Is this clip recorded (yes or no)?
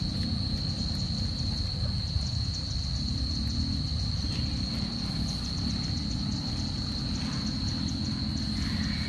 yes